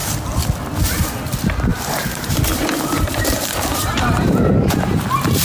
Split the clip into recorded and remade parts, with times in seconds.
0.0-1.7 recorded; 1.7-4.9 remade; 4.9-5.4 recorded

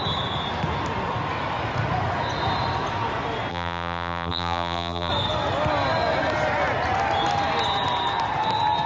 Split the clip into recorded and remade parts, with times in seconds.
0.0-3.5 recorded; 3.5-5.1 remade; 5.1-8.9 recorded

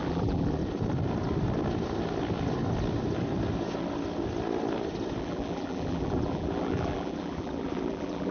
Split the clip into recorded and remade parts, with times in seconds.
0.0-0.6 remade; 0.6-5.2 recorded; 5.2-8.3 remade

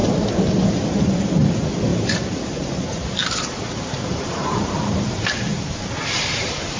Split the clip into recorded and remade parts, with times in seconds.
0.0-1.1 remade; 1.1-1.9 recorded; 1.9-5.9 remade; 5.9-6.8 recorded

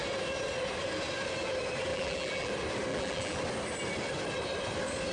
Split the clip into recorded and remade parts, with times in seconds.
0.0-1.9 recorded; 1.9-2.5 remade; 2.5-2.9 recorded; 2.9-3.4 remade; 3.4-5.1 recorded

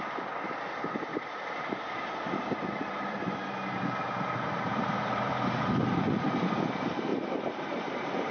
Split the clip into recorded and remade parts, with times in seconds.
0.0-1.1 recorded; 1.1-5.8 remade; 5.8-7.1 recorded; 7.1-7.8 remade; 7.8-8.3 recorded